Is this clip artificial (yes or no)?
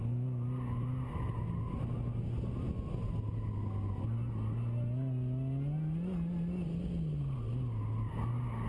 no